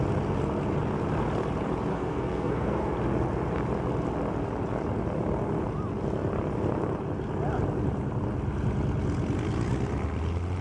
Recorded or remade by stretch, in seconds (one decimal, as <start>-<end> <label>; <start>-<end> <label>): 0.0-1.9 recorded; 1.9-2.9 remade; 2.9-10.6 recorded